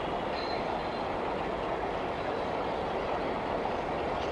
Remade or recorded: recorded